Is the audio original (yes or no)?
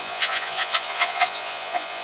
no